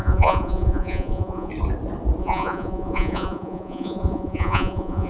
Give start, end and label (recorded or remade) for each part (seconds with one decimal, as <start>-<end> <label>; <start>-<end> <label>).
0.0-1.5 remade; 1.5-2.2 recorded; 2.2-5.1 remade